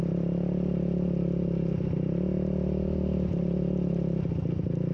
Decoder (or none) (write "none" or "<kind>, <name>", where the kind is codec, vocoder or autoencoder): none